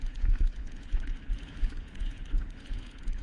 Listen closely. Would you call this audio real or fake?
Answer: fake